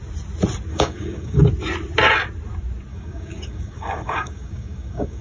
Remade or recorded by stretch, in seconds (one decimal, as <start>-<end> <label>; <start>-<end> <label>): 0.0-0.7 recorded; 0.7-1.4 remade; 1.4-2.9 recorded; 2.9-5.2 remade